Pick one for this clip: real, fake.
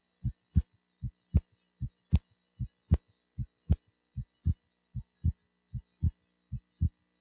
real